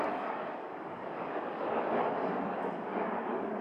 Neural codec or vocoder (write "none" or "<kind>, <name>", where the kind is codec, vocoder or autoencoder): codec, DAC